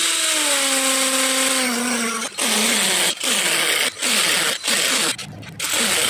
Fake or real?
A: real